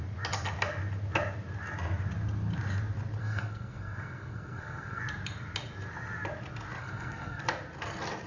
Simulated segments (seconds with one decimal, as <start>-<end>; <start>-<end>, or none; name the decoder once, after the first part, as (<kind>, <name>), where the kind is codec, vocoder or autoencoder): 3.2-5.0 (codec, SNAC); 6.8-7.4